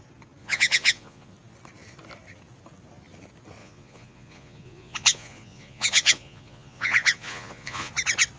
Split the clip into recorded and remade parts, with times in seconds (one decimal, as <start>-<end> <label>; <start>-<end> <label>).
0.0-0.4 recorded; 0.4-1.3 remade; 1.3-3.6 recorded; 3.6-7.9 remade; 7.9-8.4 recorded